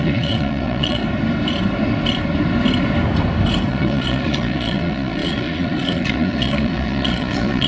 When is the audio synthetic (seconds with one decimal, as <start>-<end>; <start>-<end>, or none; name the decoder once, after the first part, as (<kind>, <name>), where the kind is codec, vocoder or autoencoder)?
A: 0.0-1.0 (vocoder, Vocos); 3.7-7.7